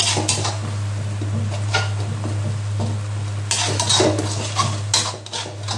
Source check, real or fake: real